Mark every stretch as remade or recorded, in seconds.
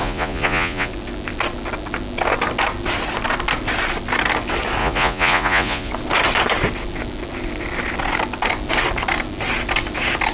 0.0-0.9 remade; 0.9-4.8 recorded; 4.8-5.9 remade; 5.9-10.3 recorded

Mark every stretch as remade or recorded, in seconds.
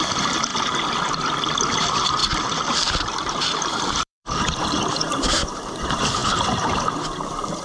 0.0-0.5 remade; 0.5-1.1 recorded; 1.1-7.6 remade